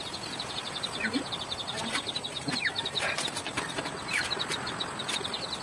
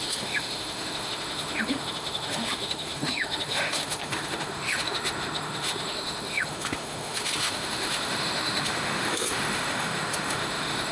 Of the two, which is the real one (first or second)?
first